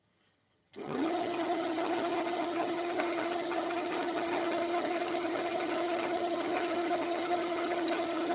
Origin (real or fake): fake